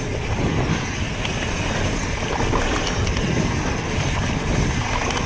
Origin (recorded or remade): recorded